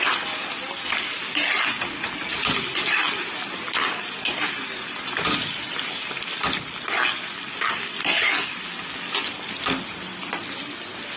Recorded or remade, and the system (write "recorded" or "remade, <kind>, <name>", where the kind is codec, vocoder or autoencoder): recorded